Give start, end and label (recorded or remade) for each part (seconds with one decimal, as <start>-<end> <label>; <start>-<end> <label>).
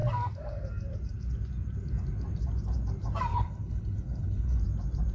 0.0-3.3 recorded; 3.3-4.6 remade; 4.6-5.1 recorded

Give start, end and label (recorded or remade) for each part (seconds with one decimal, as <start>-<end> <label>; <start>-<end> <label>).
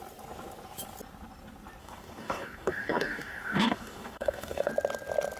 0.0-1.8 recorded; 1.8-4.7 remade; 4.7-5.4 recorded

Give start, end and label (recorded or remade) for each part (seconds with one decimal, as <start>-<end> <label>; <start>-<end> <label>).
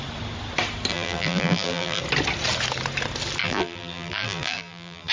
0.0-0.9 recorded; 0.9-2.0 remade; 2.0-3.4 recorded; 3.4-5.1 remade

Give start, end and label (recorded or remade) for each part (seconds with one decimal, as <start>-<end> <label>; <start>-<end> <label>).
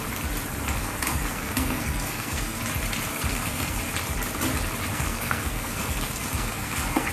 0.0-0.8 recorded; 0.8-2.6 remade; 2.6-3.1 recorded; 3.1-3.8 remade; 3.8-4.9 recorded; 4.9-7.1 remade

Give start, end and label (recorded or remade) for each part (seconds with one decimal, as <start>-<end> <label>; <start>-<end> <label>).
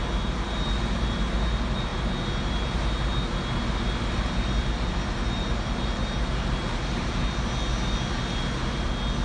0.0-9.2 recorded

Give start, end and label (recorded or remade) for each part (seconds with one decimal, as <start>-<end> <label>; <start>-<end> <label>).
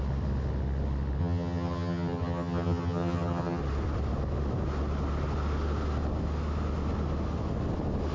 0.0-1.2 recorded; 1.2-3.6 remade; 3.6-8.1 recorded